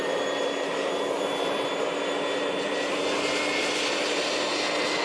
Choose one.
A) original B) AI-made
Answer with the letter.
A